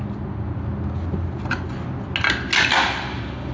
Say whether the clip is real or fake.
real